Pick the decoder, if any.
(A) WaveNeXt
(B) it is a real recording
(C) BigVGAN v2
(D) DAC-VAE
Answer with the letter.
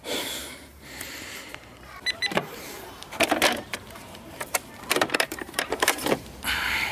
C